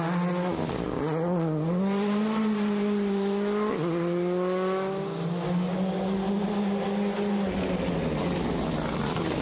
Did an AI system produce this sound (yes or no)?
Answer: no